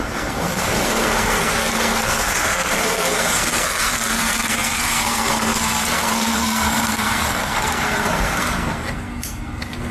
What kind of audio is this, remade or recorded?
remade